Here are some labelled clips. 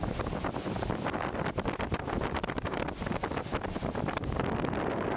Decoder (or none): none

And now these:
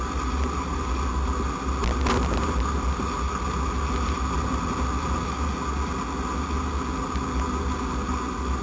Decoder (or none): none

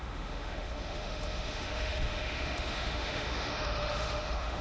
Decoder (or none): autoencoder, DAC-VAE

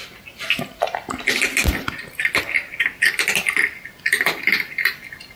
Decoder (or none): none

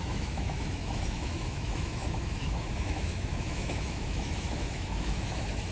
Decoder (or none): autoencoder, DAC-VAE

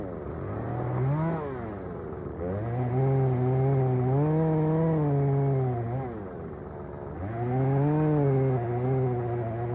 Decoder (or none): none